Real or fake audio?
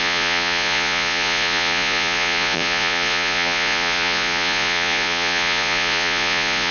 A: fake